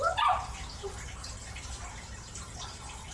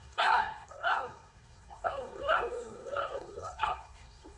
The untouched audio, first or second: first